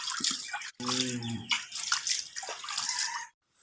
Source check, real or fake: fake